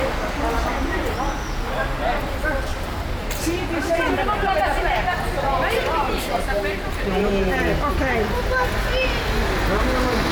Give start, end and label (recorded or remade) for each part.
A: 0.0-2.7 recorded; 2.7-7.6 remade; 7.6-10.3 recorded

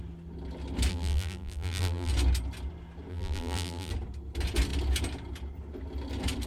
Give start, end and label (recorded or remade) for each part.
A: 0.0-0.9 recorded; 0.9-2.1 remade; 2.1-3.1 recorded; 3.1-3.9 remade; 3.9-6.5 recorded

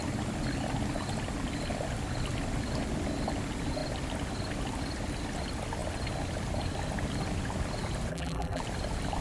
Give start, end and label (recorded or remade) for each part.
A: 0.0-8.1 recorded; 8.1-8.6 remade; 8.6-9.2 recorded

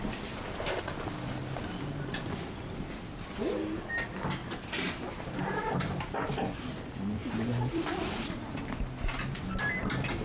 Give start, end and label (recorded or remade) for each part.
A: 0.0-4.4 recorded; 4.4-6.0 remade; 6.0-7.2 recorded; 7.2-8.1 remade; 8.1-10.2 recorded

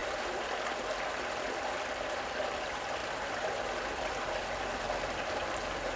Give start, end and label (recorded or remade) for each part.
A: 0.0-1.1 recorded; 1.1-3.0 remade; 3.0-4.1 recorded; 4.1-6.0 remade

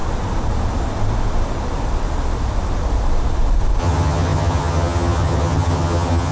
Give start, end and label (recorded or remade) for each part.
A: 0.0-3.8 recorded; 3.8-6.3 remade